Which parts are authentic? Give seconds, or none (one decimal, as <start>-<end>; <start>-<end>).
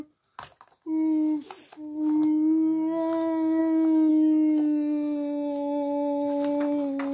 0.0-7.1